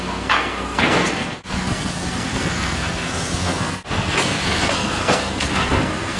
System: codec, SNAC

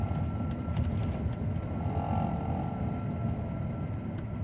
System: none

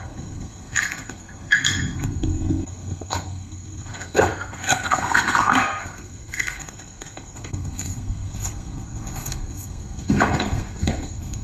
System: codec, SNAC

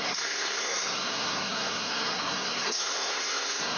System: codec, SNAC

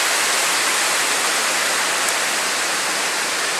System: none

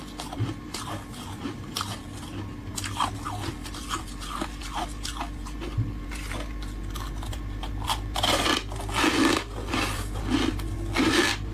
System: none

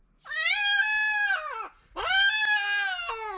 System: none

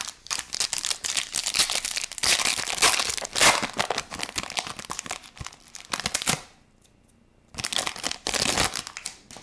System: none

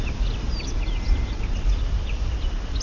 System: none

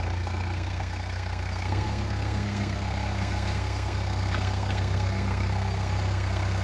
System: codec, SNAC